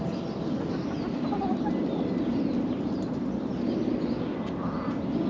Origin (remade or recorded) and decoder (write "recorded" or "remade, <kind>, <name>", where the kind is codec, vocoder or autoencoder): recorded